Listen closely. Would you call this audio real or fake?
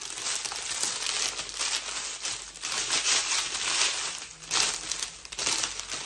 real